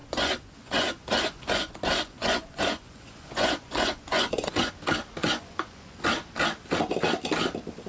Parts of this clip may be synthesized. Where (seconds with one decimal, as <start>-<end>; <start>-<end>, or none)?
0.0-4.7; 5.2-6.0